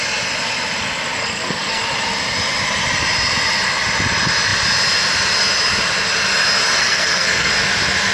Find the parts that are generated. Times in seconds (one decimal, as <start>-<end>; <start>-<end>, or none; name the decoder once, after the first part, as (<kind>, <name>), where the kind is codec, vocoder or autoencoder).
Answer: 1.2-1.8 (codec, SNAC); 6.8-7.5